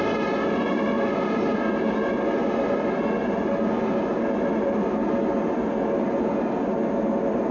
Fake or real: real